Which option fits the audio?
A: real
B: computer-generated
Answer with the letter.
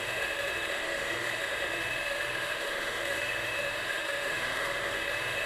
B